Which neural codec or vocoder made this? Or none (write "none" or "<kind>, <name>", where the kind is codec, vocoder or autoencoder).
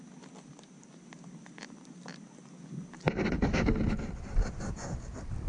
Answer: none